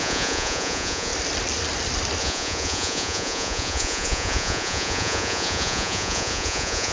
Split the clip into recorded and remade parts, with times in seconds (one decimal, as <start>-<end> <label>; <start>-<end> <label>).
0.0-1.1 remade; 1.1-2.2 recorded; 2.2-6.9 remade